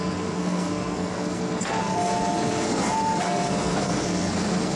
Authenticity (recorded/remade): remade